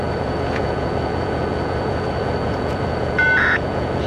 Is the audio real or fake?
fake